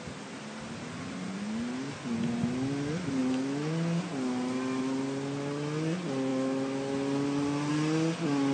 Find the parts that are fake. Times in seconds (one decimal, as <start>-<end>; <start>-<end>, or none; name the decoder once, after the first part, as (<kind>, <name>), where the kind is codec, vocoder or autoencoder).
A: none